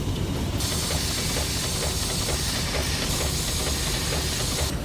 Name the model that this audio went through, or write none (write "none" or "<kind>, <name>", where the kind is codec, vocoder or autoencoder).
none